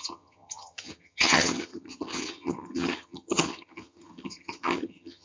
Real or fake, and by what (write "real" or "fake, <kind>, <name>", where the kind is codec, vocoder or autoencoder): fake, vocoder, HiFi-GAN